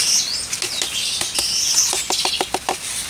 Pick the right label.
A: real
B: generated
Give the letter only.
A